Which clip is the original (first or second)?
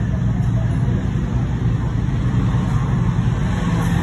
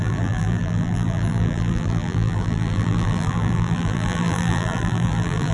first